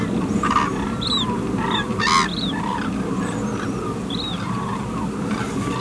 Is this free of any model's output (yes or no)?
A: yes